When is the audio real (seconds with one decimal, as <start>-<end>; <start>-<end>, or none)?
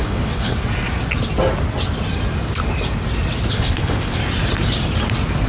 0.5-3.5; 4.2-5.5